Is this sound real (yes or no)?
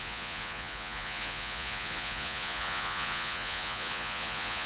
no